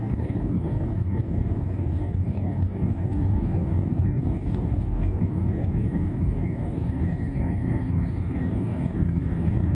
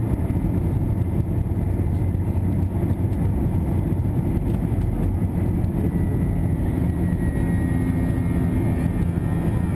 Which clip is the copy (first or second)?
first